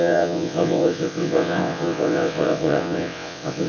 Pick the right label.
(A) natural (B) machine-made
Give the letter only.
B